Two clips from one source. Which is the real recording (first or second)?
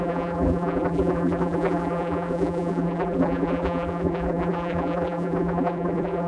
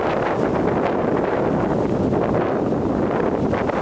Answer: second